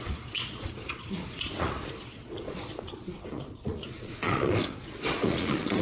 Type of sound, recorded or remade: remade